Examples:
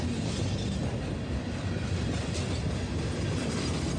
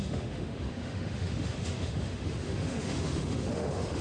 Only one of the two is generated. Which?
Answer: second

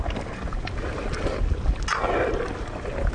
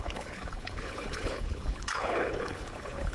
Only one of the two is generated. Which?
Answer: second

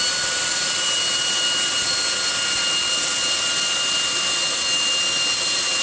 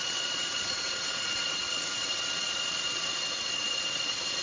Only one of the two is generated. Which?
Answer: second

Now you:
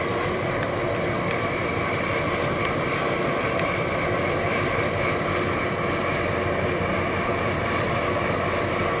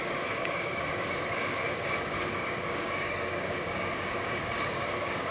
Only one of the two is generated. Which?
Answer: second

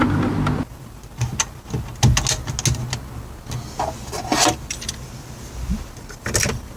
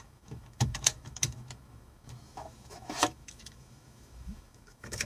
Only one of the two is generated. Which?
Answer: second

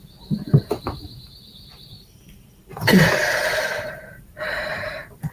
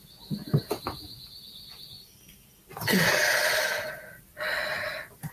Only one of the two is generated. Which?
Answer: first